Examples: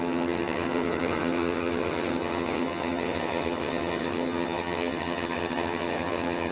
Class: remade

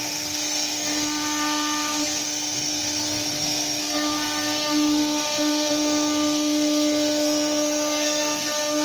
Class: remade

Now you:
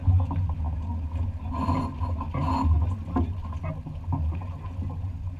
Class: recorded